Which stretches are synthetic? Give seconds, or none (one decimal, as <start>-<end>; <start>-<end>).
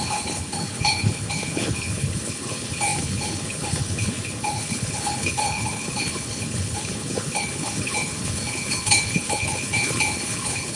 0.0-10.8